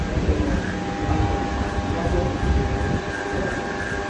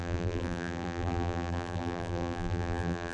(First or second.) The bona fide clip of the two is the first